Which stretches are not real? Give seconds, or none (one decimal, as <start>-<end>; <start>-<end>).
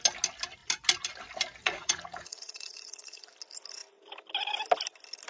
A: 1.6-3.3